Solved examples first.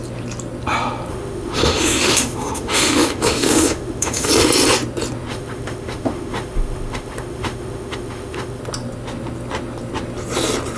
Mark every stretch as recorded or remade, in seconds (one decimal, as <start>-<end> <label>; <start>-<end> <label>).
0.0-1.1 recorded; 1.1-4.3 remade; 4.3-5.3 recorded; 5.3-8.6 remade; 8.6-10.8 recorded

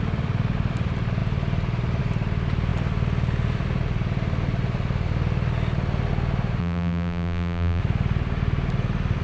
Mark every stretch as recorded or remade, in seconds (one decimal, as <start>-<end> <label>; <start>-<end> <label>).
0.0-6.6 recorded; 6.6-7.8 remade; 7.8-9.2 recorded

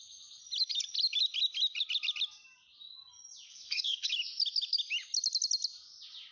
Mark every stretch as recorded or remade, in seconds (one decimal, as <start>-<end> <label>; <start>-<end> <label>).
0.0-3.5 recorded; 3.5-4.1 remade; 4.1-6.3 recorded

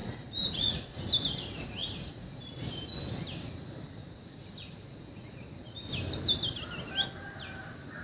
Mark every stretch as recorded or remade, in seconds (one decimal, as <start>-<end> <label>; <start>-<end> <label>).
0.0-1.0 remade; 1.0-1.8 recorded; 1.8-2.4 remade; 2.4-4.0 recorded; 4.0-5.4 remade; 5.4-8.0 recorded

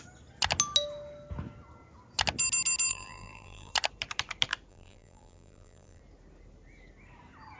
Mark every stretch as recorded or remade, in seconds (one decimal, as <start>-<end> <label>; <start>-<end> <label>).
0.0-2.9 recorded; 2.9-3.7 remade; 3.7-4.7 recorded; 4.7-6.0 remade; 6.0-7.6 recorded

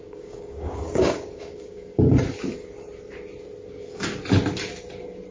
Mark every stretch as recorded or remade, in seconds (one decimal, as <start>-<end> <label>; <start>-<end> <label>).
0.0-1.9 remade; 1.9-5.3 recorded

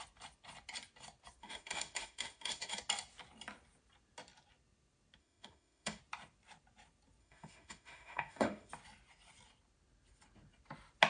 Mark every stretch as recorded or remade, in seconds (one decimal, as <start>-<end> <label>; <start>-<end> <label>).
0.0-1.4 recorded; 1.4-2.8 remade; 2.8-5.2 recorded; 5.2-6.0 remade; 6.0-7.2 recorded; 7.2-8.7 remade; 8.7-11.1 recorded